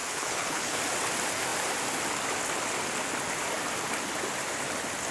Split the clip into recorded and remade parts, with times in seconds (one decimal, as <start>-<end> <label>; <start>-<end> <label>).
0.0-0.8 remade; 0.8-5.1 recorded

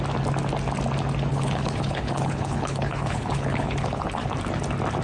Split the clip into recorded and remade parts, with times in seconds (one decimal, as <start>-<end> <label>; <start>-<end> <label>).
0.0-1.3 recorded; 1.3-4.3 remade; 4.3-5.0 recorded

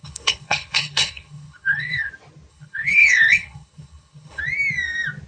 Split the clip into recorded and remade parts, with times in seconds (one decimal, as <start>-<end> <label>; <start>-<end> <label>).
0.0-2.1 remade; 2.1-2.5 recorded; 2.5-4.4 remade; 4.4-5.3 recorded

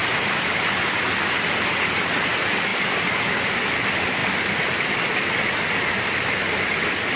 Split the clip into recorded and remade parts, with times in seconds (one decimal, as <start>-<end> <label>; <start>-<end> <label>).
0.0-7.2 recorded

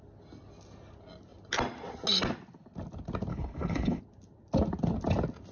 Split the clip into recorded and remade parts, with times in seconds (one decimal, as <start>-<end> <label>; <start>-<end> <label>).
0.0-3.3 recorded; 3.3-4.0 remade; 4.0-5.5 recorded

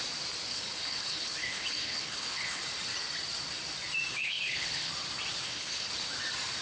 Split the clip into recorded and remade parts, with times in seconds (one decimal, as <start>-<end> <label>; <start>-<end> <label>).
0.0-0.5 recorded; 0.5-2.6 remade; 2.6-4.1 recorded; 4.1-4.9 remade; 4.9-5.4 recorded; 5.4-5.9 remade; 5.9-6.6 recorded

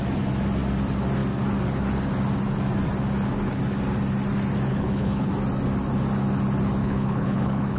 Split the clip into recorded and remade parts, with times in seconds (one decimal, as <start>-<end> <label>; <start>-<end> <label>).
0.0-4.7 recorded; 4.7-5.3 remade; 5.3-6.8 recorded; 6.8-7.8 remade

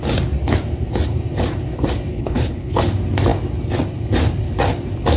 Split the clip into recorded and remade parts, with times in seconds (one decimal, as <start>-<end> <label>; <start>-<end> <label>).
0.0-2.1 recorded; 2.1-2.8 remade; 2.8-5.2 recorded